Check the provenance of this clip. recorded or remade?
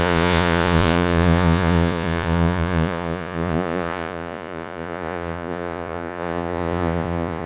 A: remade